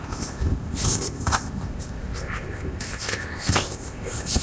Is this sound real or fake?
fake